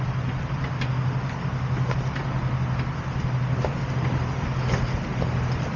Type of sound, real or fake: real